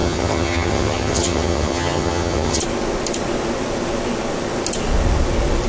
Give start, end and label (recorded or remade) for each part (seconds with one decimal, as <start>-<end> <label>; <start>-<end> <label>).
0.0-2.6 remade; 2.6-5.7 recorded

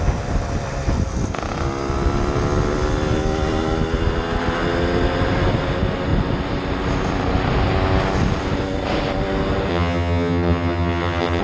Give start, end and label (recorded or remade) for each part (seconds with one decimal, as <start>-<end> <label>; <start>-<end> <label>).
0.0-9.7 recorded; 9.7-11.4 remade

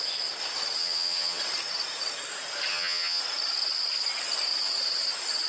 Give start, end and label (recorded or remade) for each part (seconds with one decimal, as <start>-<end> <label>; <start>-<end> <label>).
0.0-0.8 recorded; 0.8-1.4 remade; 1.4-2.7 recorded; 2.7-3.2 remade; 3.2-5.5 recorded

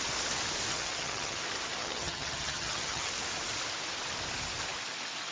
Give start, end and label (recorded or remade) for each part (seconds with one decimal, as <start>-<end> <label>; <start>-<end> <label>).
0.0-0.7 recorded; 0.7-1.4 remade; 1.4-1.8 recorded; 1.8-3.1 remade; 3.1-5.3 recorded

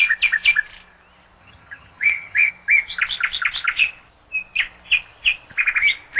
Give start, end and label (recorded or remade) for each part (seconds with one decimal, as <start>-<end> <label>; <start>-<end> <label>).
0.0-1.4 recorded; 1.4-2.5 remade; 2.5-6.2 recorded

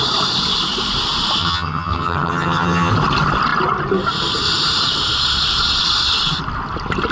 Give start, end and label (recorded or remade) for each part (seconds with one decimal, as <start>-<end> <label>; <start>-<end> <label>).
0.0-1.4 recorded; 1.4-2.9 remade; 2.9-7.1 recorded

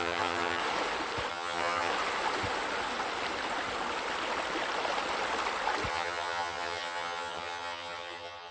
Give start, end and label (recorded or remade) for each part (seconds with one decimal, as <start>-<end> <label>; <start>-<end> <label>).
0.0-0.6 remade; 0.6-1.3 recorded; 1.3-1.9 remade; 1.9-5.9 recorded; 5.9-8.5 remade

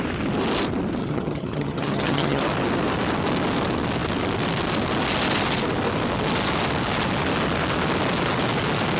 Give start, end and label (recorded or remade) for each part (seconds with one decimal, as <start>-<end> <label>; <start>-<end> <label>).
0.0-1.0 recorded; 1.0-2.4 remade; 2.4-9.0 recorded